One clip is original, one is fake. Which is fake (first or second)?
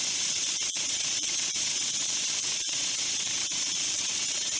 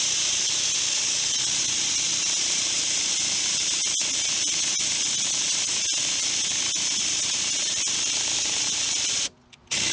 first